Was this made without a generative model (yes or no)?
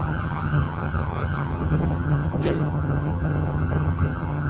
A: no